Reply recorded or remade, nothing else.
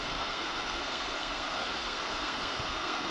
remade